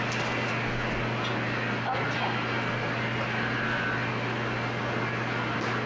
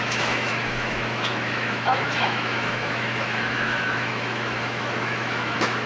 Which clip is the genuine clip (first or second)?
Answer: first